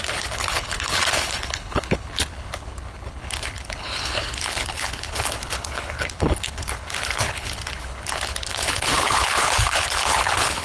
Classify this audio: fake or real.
fake